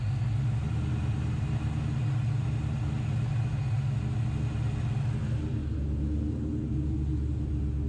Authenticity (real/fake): real